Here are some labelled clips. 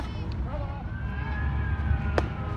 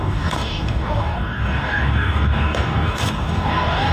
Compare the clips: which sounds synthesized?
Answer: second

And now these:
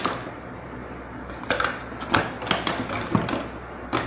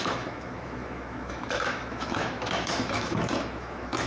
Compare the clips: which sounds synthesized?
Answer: second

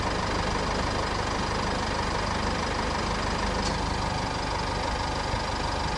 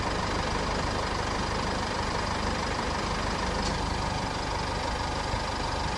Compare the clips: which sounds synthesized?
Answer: second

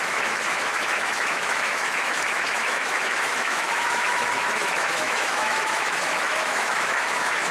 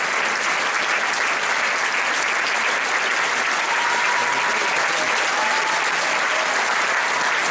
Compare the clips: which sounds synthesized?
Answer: first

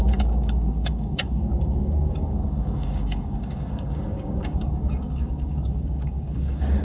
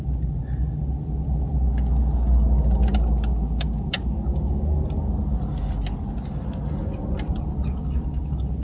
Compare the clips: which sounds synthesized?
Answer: first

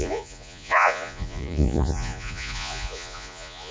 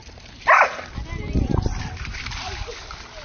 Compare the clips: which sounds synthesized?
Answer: first